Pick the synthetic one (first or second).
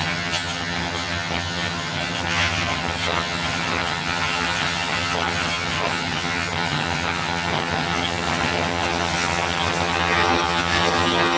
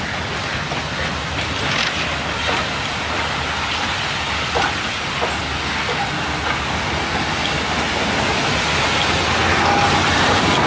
first